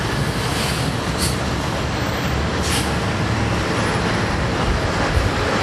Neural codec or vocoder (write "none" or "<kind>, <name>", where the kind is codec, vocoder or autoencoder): vocoder, BigVGAN v2